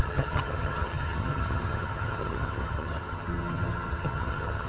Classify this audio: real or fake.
fake